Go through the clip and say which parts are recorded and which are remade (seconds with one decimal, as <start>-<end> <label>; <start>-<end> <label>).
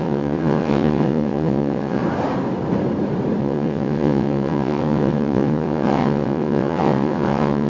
0.0-2.0 remade; 2.0-3.4 recorded; 3.4-7.7 remade